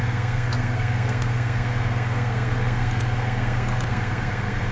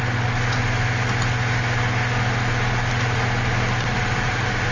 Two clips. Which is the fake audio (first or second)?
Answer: first